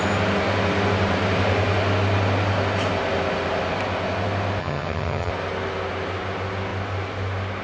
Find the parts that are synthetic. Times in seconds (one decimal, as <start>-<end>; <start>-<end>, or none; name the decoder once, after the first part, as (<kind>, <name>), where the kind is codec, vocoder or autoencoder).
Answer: 4.6-5.3 (vocoder, HiFi-GAN)